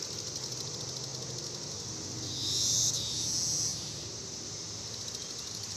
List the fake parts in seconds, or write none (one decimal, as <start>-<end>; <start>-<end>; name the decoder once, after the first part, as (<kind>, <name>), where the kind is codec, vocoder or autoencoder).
3.7-4.4 (vocoder, BigVGAN v2)